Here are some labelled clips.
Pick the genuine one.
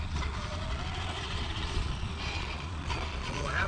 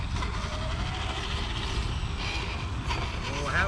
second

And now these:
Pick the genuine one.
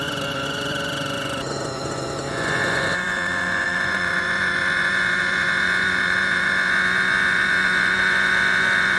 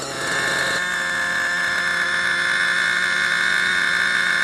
second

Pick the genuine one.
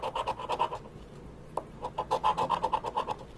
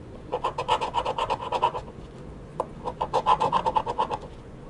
first